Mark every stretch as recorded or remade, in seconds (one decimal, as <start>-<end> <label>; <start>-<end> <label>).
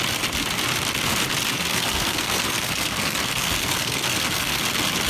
0.0-1.5 recorded; 1.5-4.6 remade; 4.6-5.1 recorded